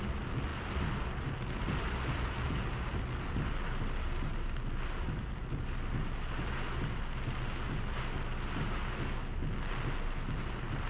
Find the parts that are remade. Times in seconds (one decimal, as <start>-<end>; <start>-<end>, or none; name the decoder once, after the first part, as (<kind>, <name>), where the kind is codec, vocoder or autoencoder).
none